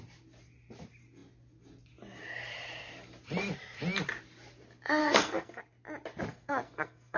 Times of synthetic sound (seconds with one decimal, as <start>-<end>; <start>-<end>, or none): 5.0-5.6; 6.3-7.2